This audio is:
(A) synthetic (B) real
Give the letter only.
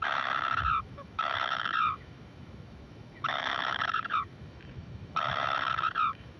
A